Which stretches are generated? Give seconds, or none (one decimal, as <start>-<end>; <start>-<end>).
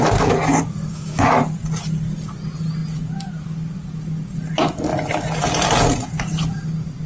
0.9-1.4